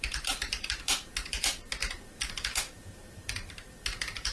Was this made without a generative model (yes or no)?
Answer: no